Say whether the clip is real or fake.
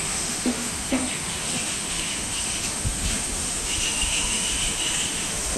fake